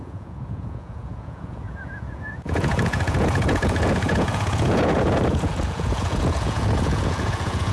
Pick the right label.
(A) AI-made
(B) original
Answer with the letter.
A